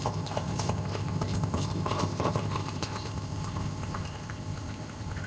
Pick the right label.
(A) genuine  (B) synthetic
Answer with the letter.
B